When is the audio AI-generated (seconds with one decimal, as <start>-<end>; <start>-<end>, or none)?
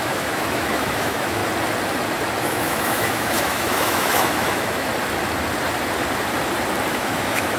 0.0-1.4; 2.4-4.9; 6.9-7.6